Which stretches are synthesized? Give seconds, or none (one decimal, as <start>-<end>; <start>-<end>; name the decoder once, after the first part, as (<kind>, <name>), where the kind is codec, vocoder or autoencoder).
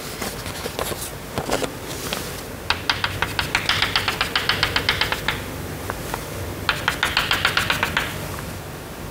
none